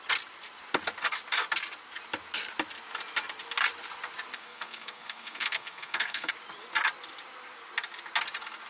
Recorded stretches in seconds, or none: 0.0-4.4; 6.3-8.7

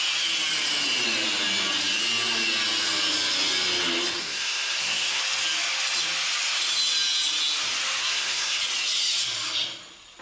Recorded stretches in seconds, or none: 0.0-4.2; 5.2-8.0; 8.6-10.2

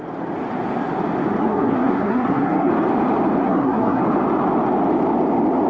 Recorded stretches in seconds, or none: 0.0-1.4; 2.7-3.4; 4.0-5.7

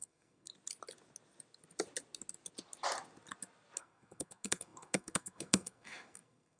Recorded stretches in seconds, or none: 0.5-3.8